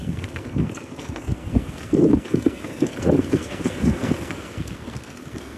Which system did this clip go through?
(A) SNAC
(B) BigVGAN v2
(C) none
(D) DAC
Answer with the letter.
A